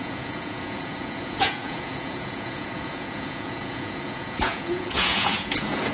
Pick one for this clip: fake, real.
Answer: fake